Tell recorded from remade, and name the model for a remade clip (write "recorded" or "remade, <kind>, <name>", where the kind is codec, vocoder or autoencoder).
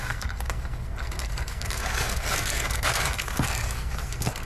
remade, codec, SNAC